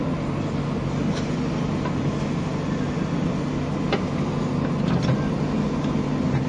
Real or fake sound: real